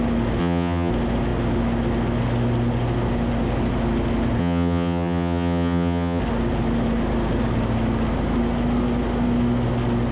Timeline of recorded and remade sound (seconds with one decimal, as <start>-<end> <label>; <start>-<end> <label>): 0.0-0.4 recorded; 0.4-0.9 remade; 0.9-4.4 recorded; 4.4-6.2 remade; 6.2-10.1 recorded